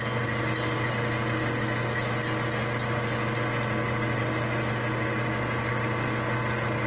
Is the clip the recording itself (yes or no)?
yes